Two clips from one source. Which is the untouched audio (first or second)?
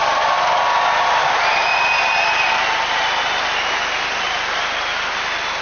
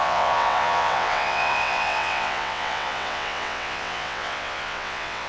first